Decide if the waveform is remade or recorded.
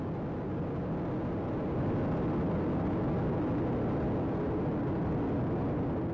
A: recorded